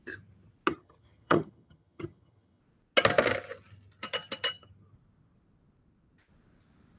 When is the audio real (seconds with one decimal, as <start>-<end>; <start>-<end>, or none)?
0.0-0.7; 2.6-7.0